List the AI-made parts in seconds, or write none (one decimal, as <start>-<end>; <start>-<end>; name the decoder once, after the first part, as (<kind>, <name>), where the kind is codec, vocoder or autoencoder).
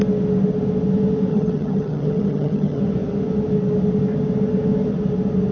1.3-2.8 (vocoder, HiFi-GAN)